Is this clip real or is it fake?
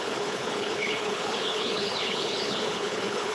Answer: fake